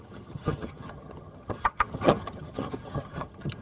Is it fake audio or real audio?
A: fake